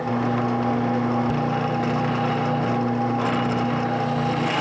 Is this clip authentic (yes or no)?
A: yes